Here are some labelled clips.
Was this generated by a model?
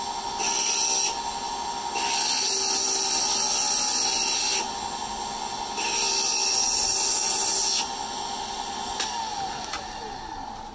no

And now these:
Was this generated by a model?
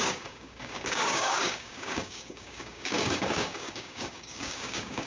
yes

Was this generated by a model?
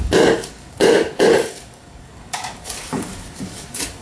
yes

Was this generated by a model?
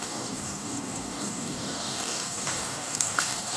yes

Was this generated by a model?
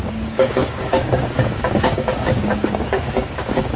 yes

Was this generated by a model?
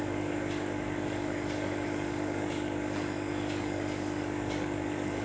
yes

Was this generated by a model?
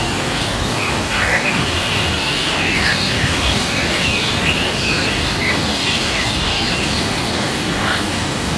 yes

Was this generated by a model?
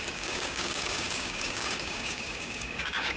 yes